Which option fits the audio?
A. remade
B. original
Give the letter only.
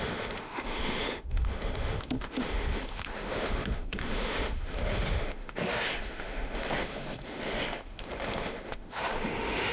A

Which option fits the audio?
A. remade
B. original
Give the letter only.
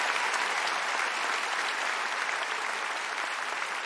B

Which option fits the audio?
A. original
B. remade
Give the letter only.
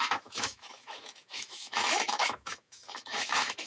B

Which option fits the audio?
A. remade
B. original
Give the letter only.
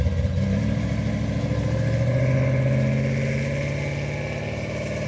B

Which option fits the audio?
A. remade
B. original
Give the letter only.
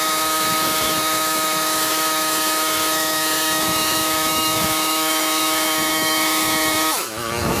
A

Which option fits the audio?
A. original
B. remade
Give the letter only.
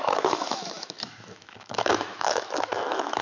B